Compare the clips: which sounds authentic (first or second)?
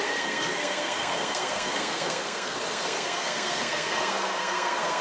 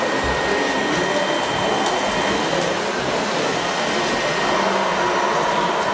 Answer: second